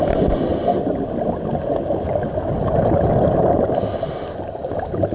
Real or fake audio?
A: real